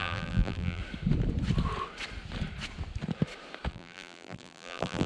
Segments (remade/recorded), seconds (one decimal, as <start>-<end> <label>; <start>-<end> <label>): 0.0-0.8 remade; 0.8-3.7 recorded; 3.7-5.1 remade